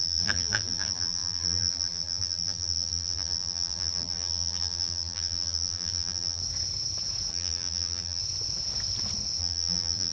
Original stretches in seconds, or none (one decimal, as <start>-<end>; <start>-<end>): 6.4-7.3; 8.2-9.4